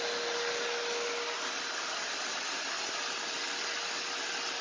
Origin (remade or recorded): recorded